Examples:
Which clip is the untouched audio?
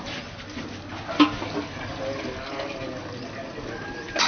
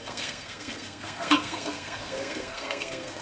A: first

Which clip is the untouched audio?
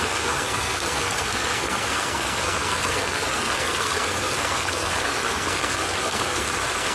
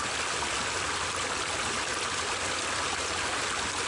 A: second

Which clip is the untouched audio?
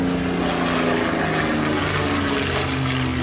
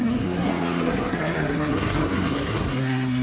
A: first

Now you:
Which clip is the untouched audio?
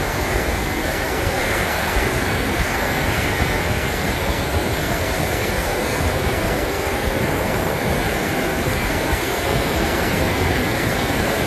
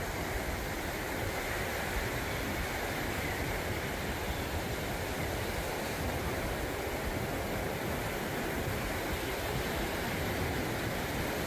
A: second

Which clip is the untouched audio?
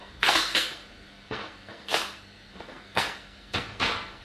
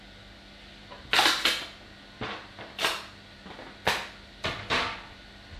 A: second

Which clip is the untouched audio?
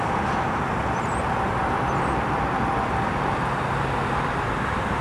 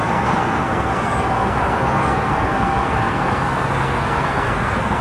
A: first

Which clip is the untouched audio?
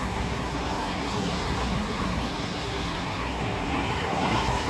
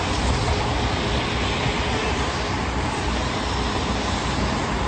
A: second